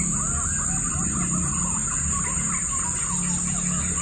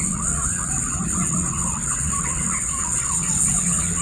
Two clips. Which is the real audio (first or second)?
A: first